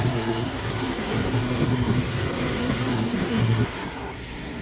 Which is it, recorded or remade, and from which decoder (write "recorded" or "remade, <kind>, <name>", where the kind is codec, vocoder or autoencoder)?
remade, codec, SNAC